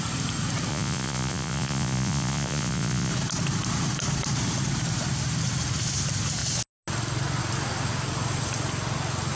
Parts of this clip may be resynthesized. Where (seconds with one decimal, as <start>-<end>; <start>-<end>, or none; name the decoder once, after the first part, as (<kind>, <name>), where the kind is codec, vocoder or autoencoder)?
0.7-3.1 (vocoder, Vocos)